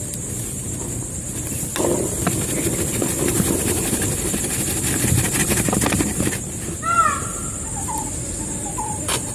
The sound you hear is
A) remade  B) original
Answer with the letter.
A